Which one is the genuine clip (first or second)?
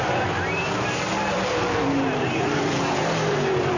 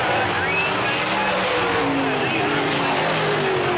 second